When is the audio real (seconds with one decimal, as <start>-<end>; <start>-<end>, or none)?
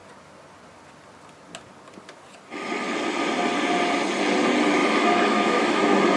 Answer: 0.0-4.8; 5.8-6.2